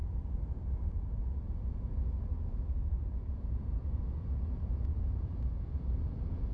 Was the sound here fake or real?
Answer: fake